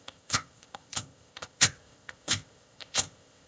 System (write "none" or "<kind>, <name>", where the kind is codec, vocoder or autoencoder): codec, ZipCodec